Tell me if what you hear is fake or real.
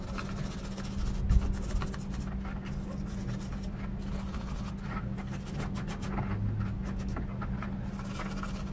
real